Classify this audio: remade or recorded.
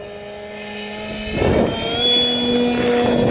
recorded